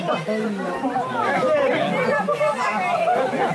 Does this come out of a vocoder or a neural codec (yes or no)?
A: no